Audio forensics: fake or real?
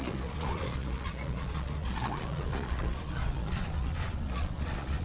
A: fake